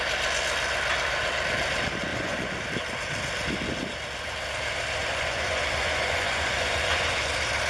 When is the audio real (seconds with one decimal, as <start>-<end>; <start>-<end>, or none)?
0.0-2.1; 2.6-5.0; 7.3-7.7